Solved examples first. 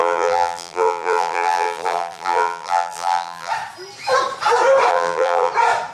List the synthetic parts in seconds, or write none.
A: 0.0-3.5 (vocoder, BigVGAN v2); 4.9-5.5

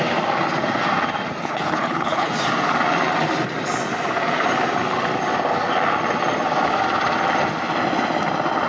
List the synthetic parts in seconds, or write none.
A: 1.4-2.3 (codec, HILCodec)

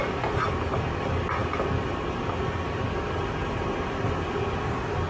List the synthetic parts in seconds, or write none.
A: none